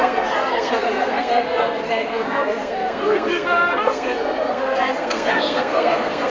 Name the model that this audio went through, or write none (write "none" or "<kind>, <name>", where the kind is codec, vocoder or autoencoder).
codec, SNAC